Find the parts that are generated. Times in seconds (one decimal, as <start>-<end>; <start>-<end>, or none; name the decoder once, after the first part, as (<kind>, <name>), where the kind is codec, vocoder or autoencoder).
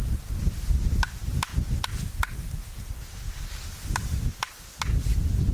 none